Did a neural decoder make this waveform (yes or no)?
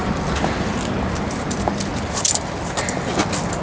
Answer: no